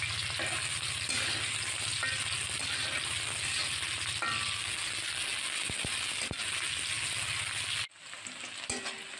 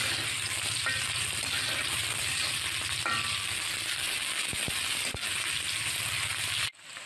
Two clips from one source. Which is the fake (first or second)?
second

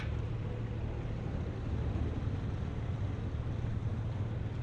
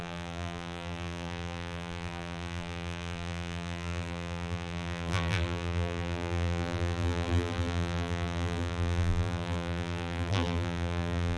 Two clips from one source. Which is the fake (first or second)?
second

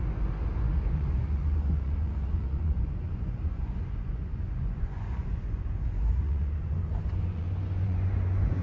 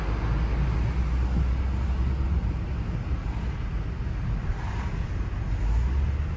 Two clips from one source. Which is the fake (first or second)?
first